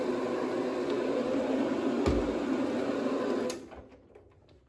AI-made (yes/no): no